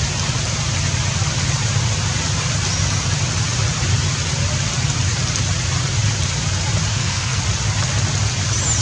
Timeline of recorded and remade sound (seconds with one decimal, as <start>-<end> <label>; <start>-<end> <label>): 0.0-6.9 recorded; 6.9-7.4 remade; 7.4-8.8 recorded